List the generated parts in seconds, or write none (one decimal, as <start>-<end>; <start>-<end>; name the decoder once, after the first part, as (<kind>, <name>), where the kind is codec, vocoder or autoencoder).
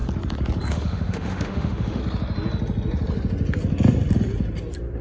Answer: 0.7-2.0 (autoencoder, DAC-VAE)